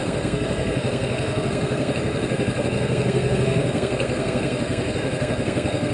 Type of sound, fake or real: fake